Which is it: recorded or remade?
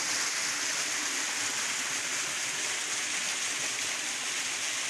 recorded